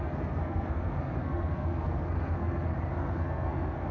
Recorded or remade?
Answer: remade